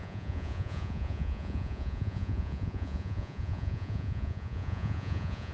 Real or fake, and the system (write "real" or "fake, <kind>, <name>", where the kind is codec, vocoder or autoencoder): fake, vocoder, Vocos